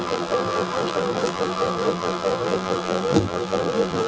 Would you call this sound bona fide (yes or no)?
no